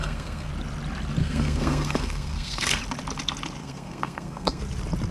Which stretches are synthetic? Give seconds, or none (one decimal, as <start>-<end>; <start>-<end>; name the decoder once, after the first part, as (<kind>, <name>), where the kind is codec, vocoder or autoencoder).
0.0-0.5 (codec, SNAC); 1.2-2.8; 3.6-4.6